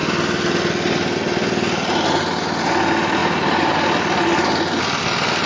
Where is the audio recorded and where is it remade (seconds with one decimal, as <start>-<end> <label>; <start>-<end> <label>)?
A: 0.0-5.5 recorded

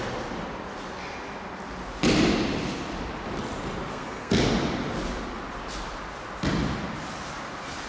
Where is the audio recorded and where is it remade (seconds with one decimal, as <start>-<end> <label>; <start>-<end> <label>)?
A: 0.0-3.9 recorded; 3.9-4.4 remade; 4.4-7.9 recorded

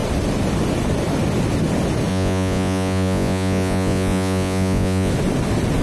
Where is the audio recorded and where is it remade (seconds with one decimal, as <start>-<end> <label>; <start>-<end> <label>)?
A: 0.0-2.1 recorded; 2.1-5.1 remade; 5.1-5.8 recorded

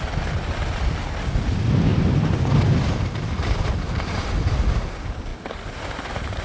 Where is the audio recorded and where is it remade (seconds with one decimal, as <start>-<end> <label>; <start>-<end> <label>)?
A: 0.0-1.9 recorded; 1.9-4.6 remade; 4.6-5.3 recorded; 5.3-6.4 remade